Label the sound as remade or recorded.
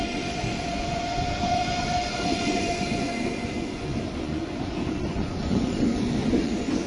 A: remade